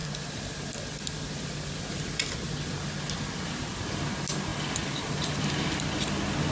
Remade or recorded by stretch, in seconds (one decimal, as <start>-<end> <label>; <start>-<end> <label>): 0.0-6.5 recorded